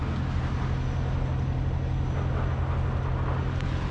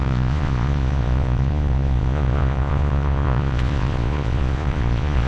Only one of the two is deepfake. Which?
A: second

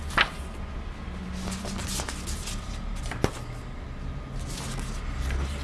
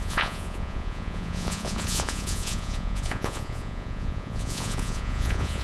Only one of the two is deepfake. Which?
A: second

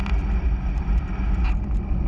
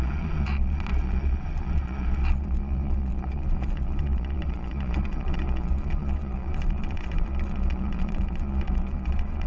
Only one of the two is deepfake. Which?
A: second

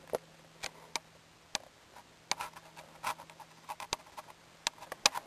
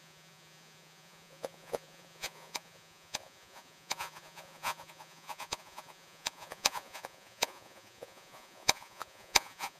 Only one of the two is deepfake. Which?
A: second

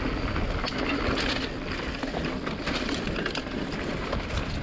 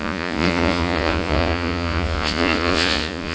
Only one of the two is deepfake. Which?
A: second